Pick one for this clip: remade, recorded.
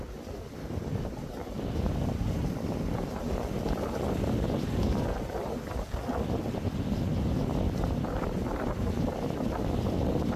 recorded